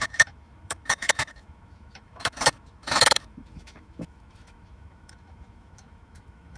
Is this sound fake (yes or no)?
yes